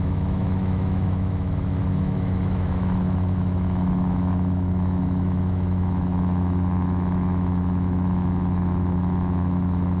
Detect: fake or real fake